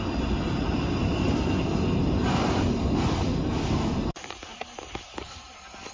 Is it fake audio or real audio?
real